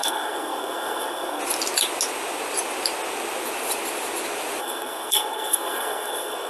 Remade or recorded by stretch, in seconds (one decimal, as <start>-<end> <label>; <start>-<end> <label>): 0.0-1.4 remade; 1.4-4.6 recorded; 4.6-6.5 remade

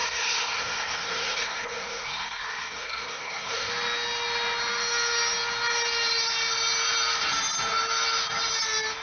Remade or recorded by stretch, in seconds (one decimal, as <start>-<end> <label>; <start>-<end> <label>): 0.0-3.7 remade; 3.7-9.0 recorded

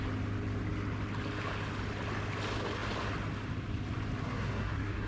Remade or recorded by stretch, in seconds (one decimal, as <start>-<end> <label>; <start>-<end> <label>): 0.0-4.2 recorded; 4.2-5.1 remade

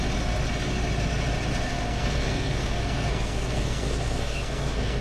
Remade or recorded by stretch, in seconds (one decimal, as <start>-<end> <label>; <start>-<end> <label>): 0.0-1.7 recorded; 1.7-5.0 remade

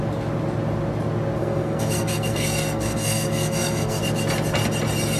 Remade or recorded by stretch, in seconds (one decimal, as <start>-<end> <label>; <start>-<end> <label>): 0.0-1.4 recorded; 1.4-4.0 remade; 4.0-5.2 recorded

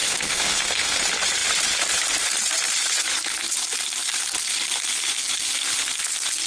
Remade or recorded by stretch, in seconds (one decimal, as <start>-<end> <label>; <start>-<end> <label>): 0.0-1.0 remade; 1.0-6.5 recorded

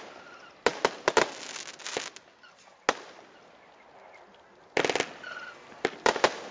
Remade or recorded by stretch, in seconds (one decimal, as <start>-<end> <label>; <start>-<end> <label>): 0.0-6.5 recorded